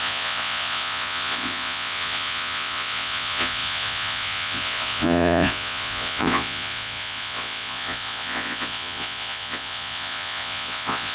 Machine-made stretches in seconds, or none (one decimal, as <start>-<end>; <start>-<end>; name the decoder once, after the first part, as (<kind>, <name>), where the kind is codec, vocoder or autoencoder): 0.0-11.1 (vocoder, Vocos)